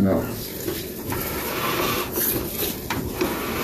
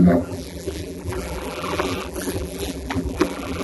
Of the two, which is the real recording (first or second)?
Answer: first